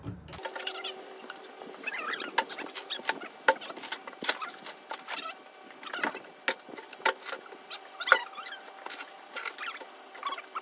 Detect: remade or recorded recorded